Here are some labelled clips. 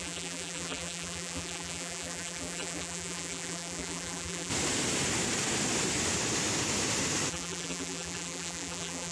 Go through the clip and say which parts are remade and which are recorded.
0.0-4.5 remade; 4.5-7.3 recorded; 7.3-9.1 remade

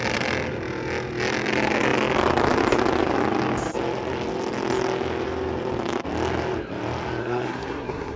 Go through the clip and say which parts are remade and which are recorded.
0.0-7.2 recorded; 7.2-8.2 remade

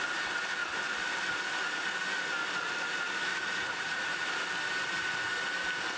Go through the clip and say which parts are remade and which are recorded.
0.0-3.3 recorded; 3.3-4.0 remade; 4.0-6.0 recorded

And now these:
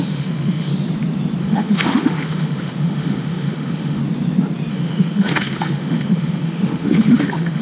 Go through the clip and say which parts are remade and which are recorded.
0.0-0.7 remade; 0.7-1.4 recorded; 1.4-4.0 remade; 4.0-4.7 recorded; 4.7-7.6 remade

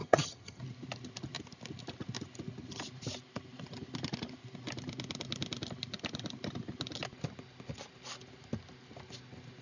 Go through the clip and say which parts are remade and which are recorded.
0.0-0.6 remade; 0.6-9.6 recorded